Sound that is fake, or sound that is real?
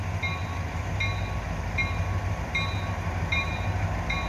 real